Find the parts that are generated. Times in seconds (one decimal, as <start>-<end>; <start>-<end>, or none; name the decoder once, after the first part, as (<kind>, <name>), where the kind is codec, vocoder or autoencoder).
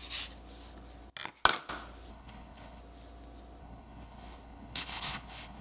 2.1-2.8 (codec, HILCodec); 3.6-5.6